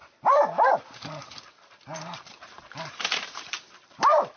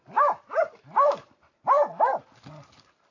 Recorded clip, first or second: second